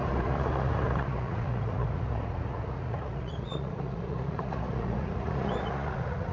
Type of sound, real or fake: fake